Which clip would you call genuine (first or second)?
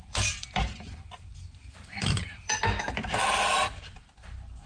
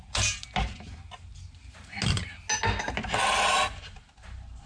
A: second